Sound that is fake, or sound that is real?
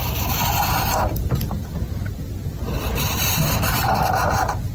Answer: real